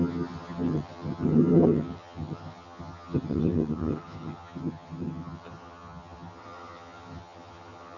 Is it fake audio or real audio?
fake